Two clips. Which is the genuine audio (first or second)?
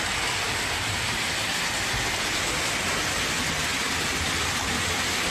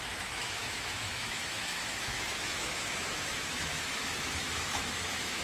first